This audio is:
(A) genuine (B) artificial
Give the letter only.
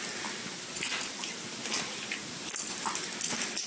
A